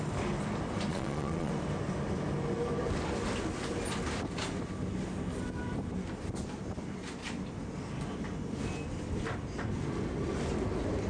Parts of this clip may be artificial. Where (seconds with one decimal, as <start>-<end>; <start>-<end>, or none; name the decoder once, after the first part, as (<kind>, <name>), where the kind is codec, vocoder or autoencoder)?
0.9-1.5 (vocoder, Vocos)

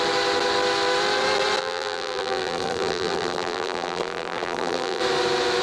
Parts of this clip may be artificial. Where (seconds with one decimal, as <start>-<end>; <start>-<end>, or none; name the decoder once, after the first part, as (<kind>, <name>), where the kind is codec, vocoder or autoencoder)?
1.6-5.0 (vocoder, BigVGAN v2)

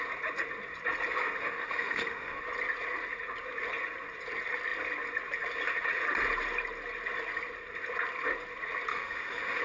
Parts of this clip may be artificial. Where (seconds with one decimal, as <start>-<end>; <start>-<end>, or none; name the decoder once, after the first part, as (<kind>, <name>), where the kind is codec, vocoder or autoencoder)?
1.4-2.4 (autoencoder, DAC-VAE); 8.9-9.6

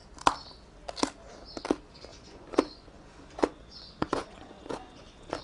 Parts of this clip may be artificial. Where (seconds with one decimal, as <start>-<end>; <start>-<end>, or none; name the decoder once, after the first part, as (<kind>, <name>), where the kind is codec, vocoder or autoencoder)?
2.1-5.4 (vocoder, Vocos)

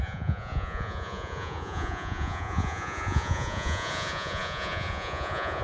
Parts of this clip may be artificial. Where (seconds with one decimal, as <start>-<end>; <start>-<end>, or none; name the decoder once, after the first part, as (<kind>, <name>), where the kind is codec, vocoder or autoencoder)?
0.0-5.6 (vocoder, Vocos)

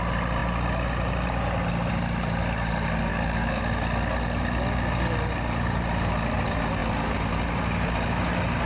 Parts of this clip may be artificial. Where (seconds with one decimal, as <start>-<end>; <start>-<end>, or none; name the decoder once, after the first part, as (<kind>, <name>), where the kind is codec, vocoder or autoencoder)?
3.1-3.6 (codec, DAC)